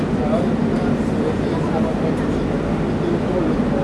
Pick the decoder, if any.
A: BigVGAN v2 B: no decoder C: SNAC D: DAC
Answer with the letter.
B